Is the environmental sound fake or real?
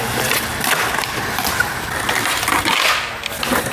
real